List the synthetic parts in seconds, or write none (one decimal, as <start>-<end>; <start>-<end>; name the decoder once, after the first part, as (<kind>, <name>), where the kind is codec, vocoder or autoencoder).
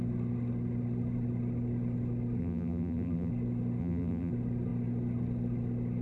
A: 2.4-3.3 (vocoder, BigVGAN v2); 3.8-4.3